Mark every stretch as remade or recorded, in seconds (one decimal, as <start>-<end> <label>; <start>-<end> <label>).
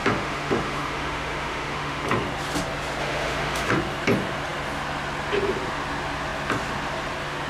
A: 0.0-2.0 remade; 2.0-3.0 recorded; 3.0-3.7 remade; 3.7-7.5 recorded